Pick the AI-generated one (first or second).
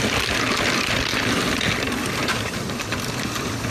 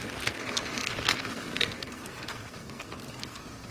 second